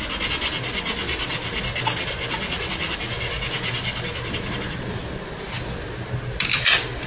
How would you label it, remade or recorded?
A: recorded